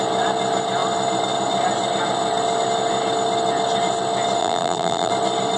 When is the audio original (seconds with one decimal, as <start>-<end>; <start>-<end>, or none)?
0.0-4.4; 5.1-5.6